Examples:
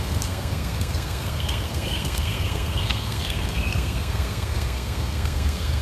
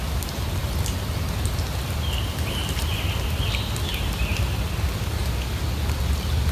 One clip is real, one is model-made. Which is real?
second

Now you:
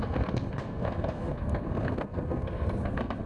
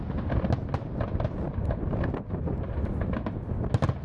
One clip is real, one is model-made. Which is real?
second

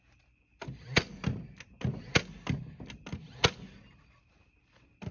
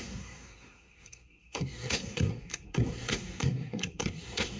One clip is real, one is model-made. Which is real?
first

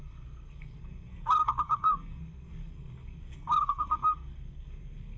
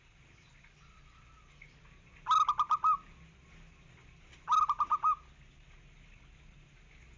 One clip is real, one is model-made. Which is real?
second